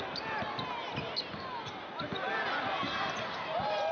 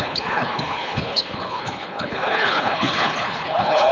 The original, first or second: first